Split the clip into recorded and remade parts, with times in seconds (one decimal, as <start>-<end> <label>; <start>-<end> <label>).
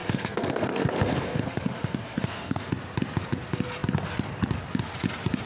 0.0-2.7 remade; 2.7-5.5 recorded